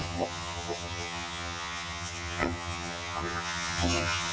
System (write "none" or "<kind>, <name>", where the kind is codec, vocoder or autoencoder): vocoder, HiFi-GAN